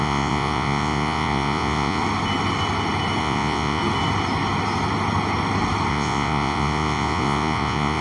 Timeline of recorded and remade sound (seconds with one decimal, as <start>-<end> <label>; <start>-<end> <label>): 0.0-2.0 remade; 2.0-3.2 recorded; 3.2-3.8 remade; 3.8-5.9 recorded; 5.9-8.0 remade